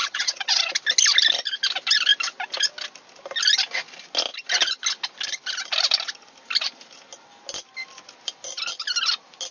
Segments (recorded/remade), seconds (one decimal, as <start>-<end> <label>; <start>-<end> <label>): 0.0-0.7 remade; 0.7-9.5 recorded